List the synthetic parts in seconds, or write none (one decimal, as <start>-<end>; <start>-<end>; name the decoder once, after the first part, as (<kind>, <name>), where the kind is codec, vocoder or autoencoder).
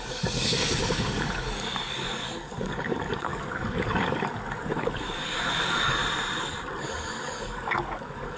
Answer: 0.0-6.0 (codec, DAC); 6.8-8.4